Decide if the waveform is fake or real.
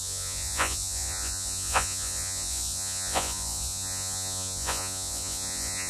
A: fake